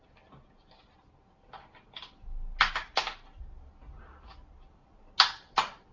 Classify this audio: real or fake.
real